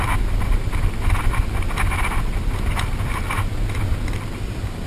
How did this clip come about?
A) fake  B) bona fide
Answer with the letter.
B